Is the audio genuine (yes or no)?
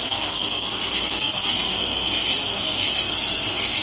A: no